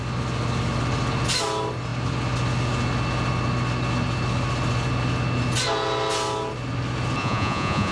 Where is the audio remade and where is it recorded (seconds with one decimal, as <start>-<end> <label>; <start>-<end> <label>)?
0.0-7.2 recorded; 7.2-7.9 remade